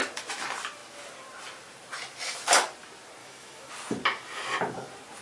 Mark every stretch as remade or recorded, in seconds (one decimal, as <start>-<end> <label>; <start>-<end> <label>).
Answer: 0.0-3.2 recorded; 3.2-3.7 remade; 3.7-5.2 recorded